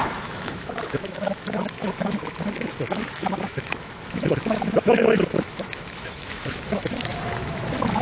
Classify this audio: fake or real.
fake